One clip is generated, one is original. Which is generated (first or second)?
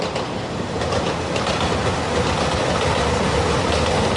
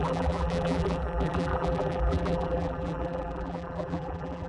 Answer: second